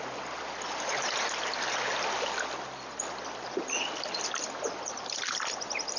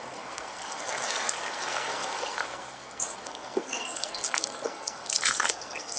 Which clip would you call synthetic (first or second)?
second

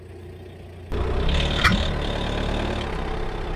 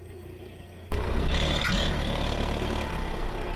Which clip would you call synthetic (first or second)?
second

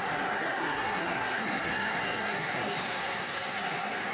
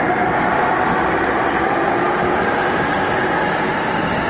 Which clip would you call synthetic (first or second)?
first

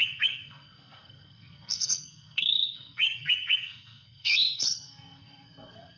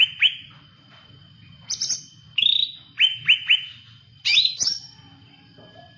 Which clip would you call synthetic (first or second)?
first